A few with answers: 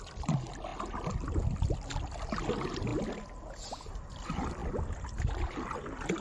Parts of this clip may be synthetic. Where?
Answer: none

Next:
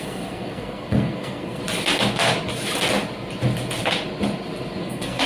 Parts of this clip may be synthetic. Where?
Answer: 0.0-1.6 (codec, SNAC); 4.8-5.3

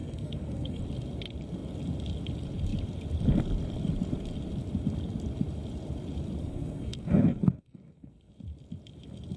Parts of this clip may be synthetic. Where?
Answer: 0.0-0.8 (codec, SNAC); 6.4-8.3

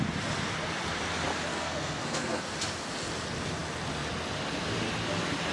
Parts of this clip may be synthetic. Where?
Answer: 1.5-2.4 (codec, SNAC)

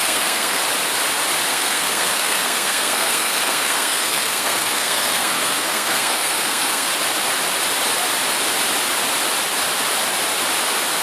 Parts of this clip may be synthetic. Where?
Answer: 0.0-0.6 (codec, SNAC); 1.5-6.9

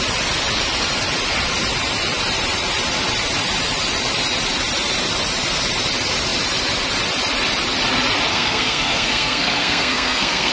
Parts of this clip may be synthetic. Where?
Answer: 8.3-10.5 (codec, SNAC)

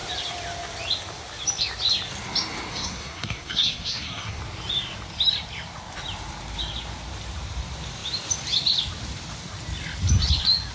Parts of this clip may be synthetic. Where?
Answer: 2.7-4.4 (codec, SNAC)

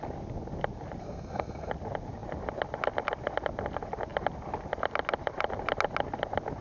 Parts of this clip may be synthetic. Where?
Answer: 1.0-1.7 (codec, SNAC)